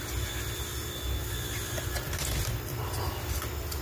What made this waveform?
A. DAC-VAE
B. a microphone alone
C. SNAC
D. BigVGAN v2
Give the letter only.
B